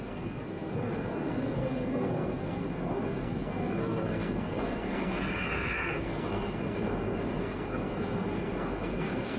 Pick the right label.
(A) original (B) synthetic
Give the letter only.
B